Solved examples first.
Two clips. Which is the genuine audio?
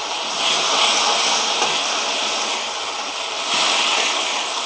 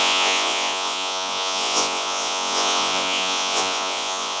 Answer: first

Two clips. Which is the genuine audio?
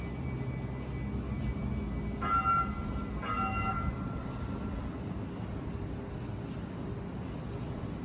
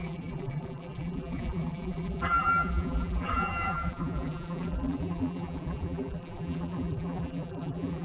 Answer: first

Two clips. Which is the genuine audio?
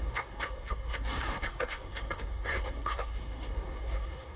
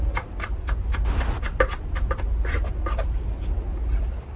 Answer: second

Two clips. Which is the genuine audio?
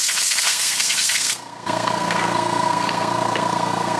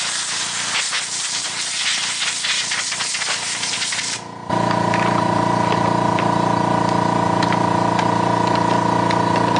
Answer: second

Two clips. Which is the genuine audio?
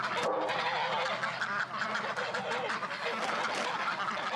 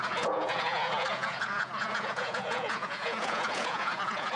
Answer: first